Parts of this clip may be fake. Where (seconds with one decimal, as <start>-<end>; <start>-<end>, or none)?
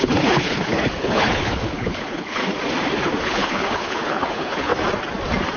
0.0-2.4; 3.2-4.7